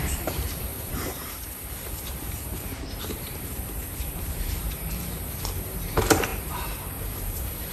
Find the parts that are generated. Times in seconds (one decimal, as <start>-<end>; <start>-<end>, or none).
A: 0.0-7.7